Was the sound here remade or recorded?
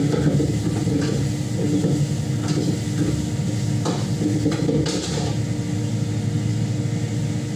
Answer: recorded